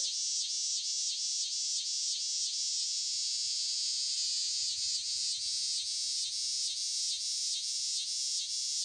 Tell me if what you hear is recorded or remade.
recorded